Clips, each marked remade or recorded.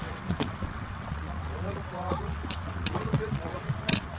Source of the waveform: remade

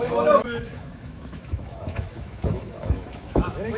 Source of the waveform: remade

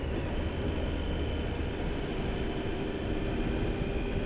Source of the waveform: recorded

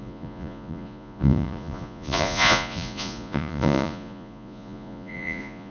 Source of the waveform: remade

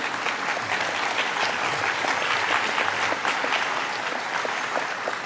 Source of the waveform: recorded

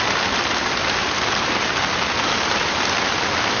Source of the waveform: recorded